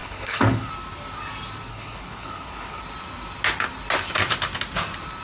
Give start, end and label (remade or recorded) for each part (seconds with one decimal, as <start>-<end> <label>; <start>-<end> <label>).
0.0-0.7 remade; 0.7-1.7 recorded; 1.7-2.8 remade; 2.8-5.2 recorded